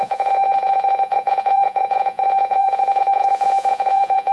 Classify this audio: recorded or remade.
remade